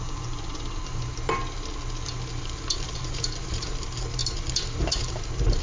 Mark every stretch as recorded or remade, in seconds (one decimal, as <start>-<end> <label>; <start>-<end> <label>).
0.0-1.4 remade; 1.4-2.4 recorded; 2.4-5.6 remade